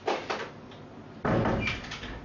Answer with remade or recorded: recorded